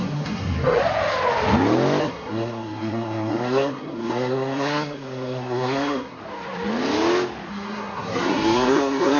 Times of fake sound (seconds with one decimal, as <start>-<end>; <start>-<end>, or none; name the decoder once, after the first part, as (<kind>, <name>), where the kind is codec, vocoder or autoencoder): 0.0-0.8 (codec, SNAC); 2.0-6.2; 7.5-9.2